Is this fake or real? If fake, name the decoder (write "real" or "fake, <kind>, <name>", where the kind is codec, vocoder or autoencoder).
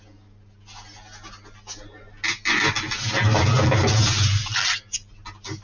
real